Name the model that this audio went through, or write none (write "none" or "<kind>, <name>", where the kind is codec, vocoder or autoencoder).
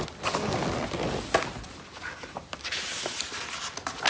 none